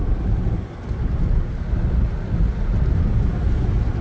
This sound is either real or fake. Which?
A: real